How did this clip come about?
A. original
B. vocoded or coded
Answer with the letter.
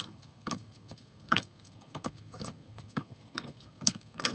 B